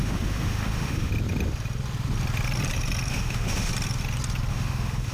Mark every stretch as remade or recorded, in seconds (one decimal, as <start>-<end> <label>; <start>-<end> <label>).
0.0-1.1 remade; 1.1-3.1 recorded; 3.1-3.7 remade; 3.7-4.5 recorded; 4.5-5.1 remade